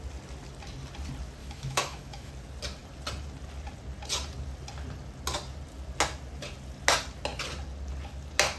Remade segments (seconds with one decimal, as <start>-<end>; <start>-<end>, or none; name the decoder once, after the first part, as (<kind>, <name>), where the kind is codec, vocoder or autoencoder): 1.4-2.3 (autoencoder, DAC-VAE)